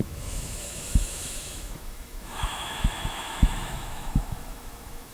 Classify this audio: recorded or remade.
remade